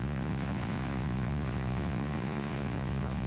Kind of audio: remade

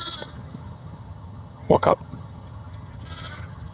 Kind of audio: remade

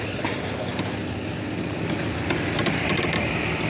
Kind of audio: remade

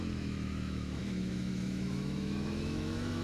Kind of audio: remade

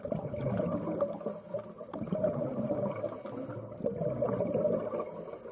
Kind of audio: recorded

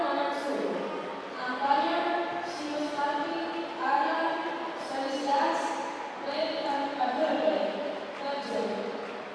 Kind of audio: recorded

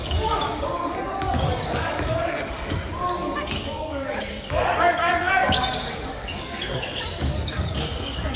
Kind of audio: remade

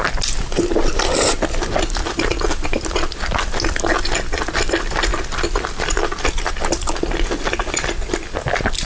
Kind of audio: recorded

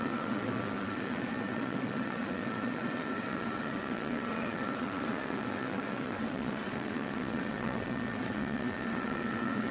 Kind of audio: remade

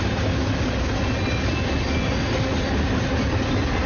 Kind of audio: recorded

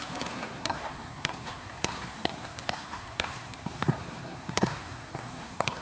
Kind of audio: remade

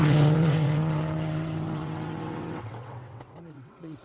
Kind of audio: remade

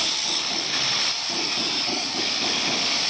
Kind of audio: recorded